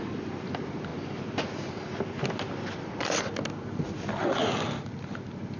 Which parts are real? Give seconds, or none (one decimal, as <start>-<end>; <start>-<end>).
0.0-5.6